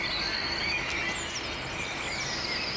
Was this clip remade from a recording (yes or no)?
no